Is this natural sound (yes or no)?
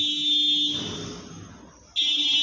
yes